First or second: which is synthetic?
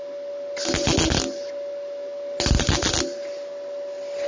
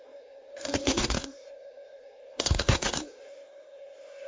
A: second